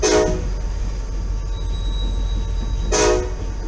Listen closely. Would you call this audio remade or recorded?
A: recorded